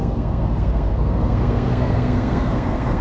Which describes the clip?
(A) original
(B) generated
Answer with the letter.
B